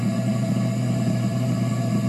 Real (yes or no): yes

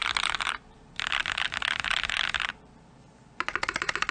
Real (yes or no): no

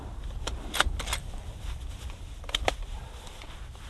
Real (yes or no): no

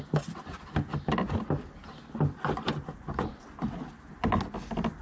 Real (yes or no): yes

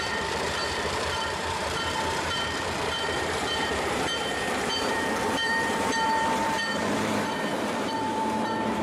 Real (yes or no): no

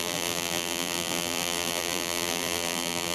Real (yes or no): no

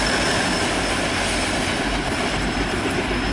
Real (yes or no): no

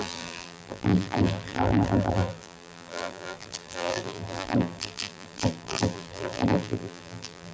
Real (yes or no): no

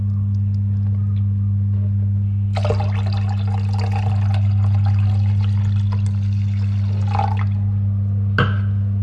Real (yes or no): yes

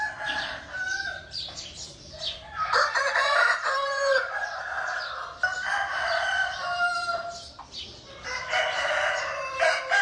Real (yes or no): no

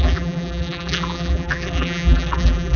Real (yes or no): no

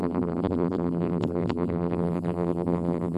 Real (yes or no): no